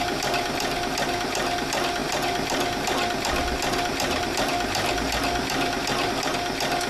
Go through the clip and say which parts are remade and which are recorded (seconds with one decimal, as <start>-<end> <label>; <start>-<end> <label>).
0.0-6.9 recorded